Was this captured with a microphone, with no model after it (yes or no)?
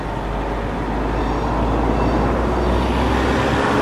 yes